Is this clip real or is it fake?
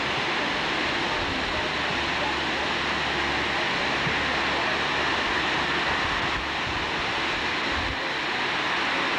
real